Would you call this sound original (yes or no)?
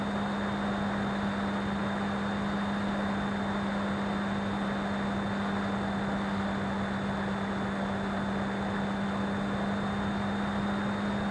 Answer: yes